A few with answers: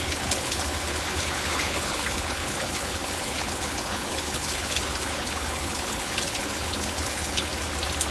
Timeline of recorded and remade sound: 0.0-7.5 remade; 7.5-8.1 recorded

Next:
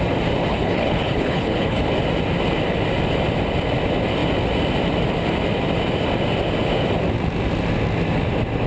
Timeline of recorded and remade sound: 0.0-0.5 recorded; 0.5-1.8 remade; 1.8-8.7 recorded

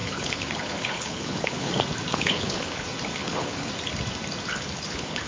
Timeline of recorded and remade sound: 0.0-1.7 remade; 1.7-2.1 recorded; 2.1-2.8 remade; 2.8-3.2 recorded; 3.2-3.7 remade; 3.7-4.5 recorded; 4.5-5.3 remade

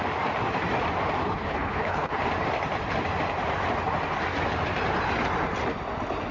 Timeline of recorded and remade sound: 0.0-1.2 recorded; 1.2-2.2 remade; 2.2-6.3 recorded

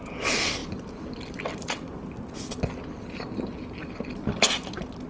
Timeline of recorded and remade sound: 0.0-5.1 recorded

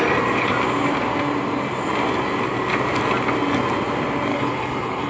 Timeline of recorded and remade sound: 0.0-4.3 recorded; 4.3-5.1 remade

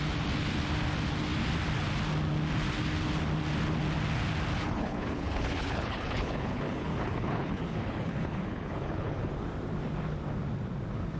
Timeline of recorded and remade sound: 0.0-4.6 recorded; 4.6-9.3 remade; 9.3-11.2 recorded